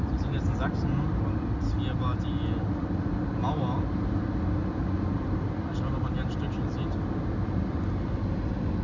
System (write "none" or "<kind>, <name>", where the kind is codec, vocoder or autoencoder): none